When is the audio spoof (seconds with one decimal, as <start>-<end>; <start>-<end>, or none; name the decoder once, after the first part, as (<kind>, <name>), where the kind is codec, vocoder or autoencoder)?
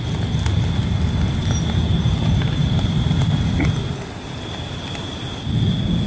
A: 0.5-4.2 (vocoder, BigVGAN v2)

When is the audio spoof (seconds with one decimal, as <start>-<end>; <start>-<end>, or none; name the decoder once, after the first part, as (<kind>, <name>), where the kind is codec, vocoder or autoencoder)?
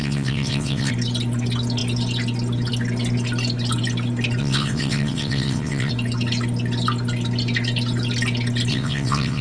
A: 0.0-0.9 (vocoder, WaveNeXt); 4.4-5.9; 8.7-9.4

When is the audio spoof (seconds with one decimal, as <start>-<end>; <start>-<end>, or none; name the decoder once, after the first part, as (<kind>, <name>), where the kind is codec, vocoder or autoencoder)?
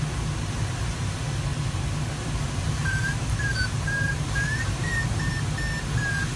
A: 1.5-5.3 (vocoder, BigVGAN v2)